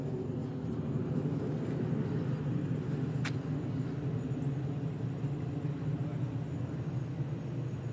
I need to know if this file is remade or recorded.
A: recorded